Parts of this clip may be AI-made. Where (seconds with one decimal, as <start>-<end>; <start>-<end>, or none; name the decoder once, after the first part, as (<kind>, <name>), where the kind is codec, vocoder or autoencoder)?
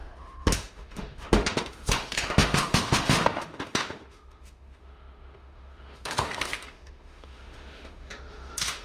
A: 0.0-8.8 (autoencoder, DAC-VAE)